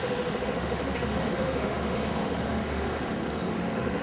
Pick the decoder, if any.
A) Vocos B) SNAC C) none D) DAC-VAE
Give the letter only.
D